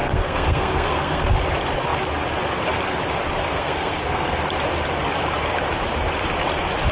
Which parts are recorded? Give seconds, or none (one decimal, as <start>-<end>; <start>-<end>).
1.3-3.5; 4.4-6.9